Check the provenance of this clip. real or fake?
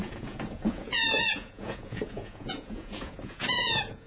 fake